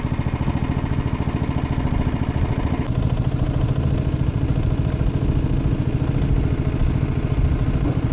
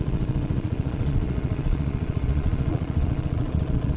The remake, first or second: second